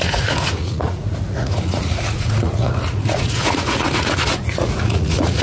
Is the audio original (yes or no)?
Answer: no